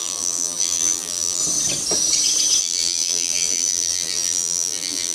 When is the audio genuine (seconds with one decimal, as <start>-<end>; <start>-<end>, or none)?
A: 1.4-2.6